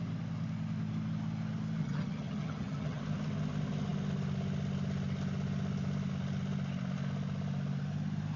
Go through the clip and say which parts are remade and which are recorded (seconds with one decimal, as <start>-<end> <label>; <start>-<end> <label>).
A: 0.0-1.8 recorded; 1.8-3.0 remade; 3.0-8.4 recorded